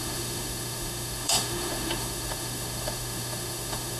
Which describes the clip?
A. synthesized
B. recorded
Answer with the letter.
A